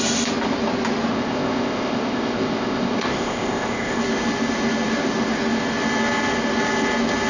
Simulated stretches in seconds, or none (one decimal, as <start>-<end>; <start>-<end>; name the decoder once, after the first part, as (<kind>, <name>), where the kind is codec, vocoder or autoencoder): 1.1-4.0 (codec, ZipCodec)